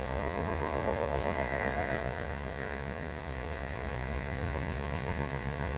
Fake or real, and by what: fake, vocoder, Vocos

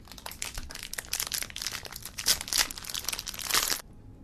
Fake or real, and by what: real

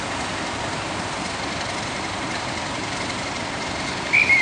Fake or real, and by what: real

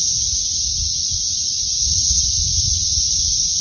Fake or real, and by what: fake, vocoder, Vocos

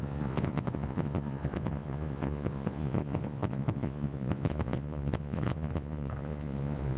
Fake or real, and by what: fake, vocoder, Vocos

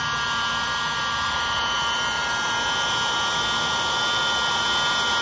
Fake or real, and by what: real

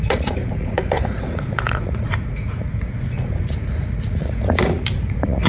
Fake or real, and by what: fake, vocoder, Vocos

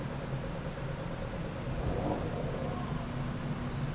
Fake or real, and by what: real